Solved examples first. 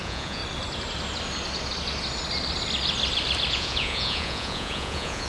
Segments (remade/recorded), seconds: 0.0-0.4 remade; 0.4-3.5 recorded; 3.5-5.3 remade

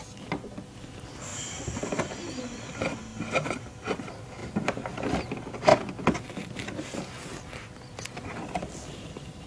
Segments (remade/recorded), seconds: 0.0-1.3 recorded; 1.3-2.4 remade; 2.4-4.4 recorded; 4.4-5.1 remade; 5.1-9.5 recorded

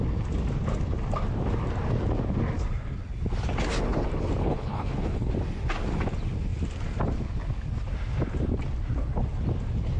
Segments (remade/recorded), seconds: 0.0-4.4 recorded; 4.4-5.3 remade; 5.3-10.0 recorded